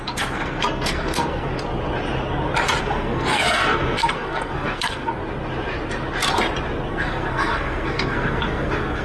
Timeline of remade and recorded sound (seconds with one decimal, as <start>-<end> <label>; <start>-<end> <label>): 0.0-1.5 remade; 1.5-2.8 recorded; 2.8-5.2 remade; 5.2-6.9 recorded; 6.9-9.0 remade

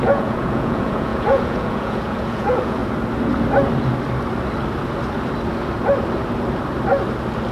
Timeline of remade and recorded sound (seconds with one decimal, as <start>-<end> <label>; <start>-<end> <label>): 0.0-2.8 remade; 2.8-7.5 recorded

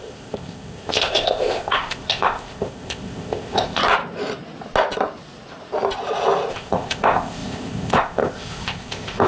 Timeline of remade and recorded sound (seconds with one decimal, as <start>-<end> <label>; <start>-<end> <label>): 0.0-3.8 remade; 3.8-6.5 recorded; 6.5-9.3 remade

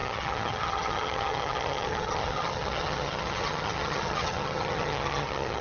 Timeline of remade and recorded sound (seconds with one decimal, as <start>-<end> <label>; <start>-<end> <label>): 0.0-5.6 remade